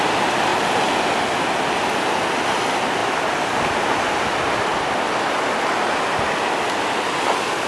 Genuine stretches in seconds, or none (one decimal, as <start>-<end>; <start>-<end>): 0.0-7.7